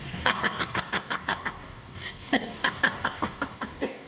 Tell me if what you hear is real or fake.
fake